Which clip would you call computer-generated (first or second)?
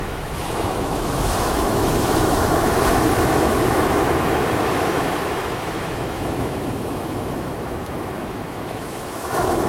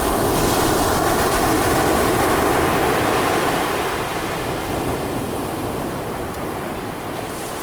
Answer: first